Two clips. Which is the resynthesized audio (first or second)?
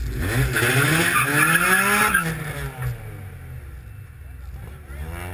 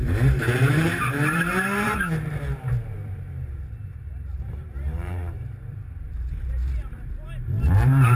second